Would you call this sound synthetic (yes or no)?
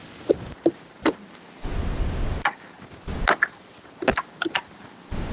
no